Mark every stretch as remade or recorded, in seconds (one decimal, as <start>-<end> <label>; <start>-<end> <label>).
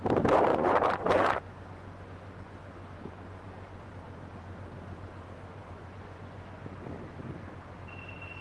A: 0.0-0.5 recorded; 0.5-3.9 remade; 3.9-5.5 recorded; 5.5-6.9 remade; 6.9-8.4 recorded